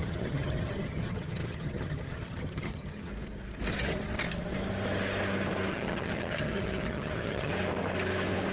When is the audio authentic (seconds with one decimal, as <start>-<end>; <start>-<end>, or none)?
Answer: 3.1-5.7; 7.5-8.5